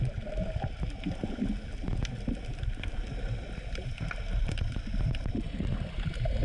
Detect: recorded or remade recorded